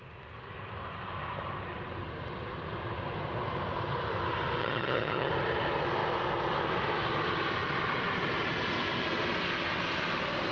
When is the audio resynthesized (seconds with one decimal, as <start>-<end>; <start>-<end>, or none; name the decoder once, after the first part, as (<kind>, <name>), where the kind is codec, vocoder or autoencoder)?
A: 4.6-5.3 (vocoder, HiFi-GAN)